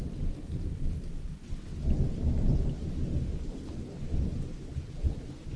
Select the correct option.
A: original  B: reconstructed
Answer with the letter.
A